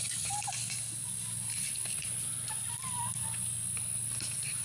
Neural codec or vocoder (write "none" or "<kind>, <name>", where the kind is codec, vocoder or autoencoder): none